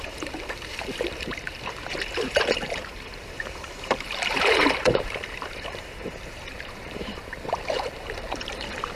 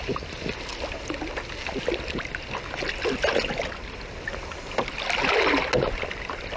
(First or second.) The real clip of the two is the second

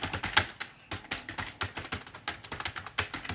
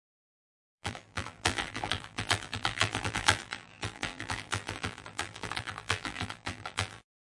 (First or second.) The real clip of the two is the first